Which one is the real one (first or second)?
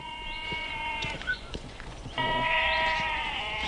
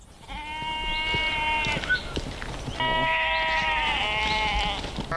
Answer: second